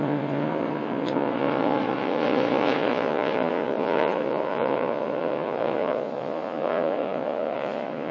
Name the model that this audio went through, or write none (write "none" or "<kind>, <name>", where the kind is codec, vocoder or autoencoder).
vocoder, Vocos